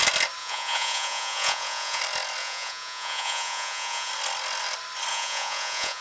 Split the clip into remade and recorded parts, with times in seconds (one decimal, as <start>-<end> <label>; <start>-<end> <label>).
0.0-0.4 recorded; 0.4-2.0 remade; 2.0-2.4 recorded; 2.4-4.1 remade; 4.1-5.1 recorded; 5.1-6.0 remade